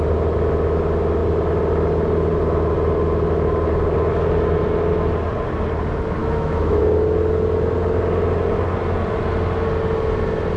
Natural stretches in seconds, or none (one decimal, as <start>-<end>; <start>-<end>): 0.0-6.2; 6.8-10.6